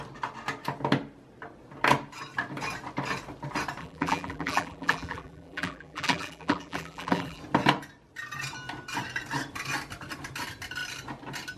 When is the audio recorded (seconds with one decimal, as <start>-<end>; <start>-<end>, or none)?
0.0-3.8; 7.4-11.6